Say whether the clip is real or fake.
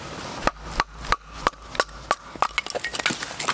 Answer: real